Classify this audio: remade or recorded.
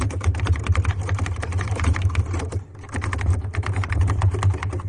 recorded